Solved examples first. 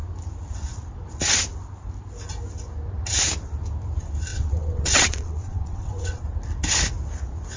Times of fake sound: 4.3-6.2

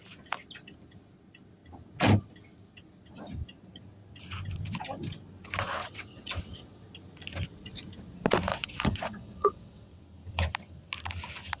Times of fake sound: 5.8-6.9; 8.5-10.0

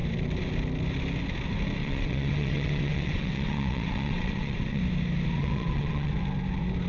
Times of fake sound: 1.8-4.8; 5.4-6.1

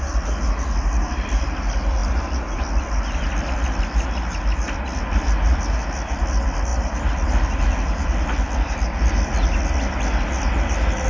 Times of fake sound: none

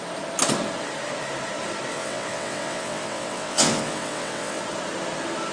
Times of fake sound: 1.9-4.6

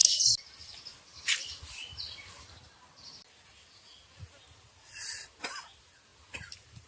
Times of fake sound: none

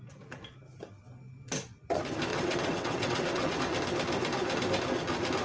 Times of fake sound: 2.3-3.6

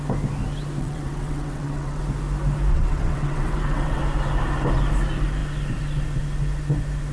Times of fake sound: 0.8-2.0; 2.7-4.0